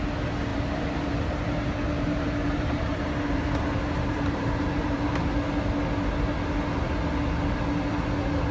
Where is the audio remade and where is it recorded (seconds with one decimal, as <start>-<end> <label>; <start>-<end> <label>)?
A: 0.0-0.5 recorded; 0.5-5.1 remade; 5.1-8.5 recorded